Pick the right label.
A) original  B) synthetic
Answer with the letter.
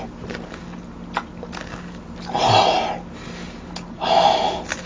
A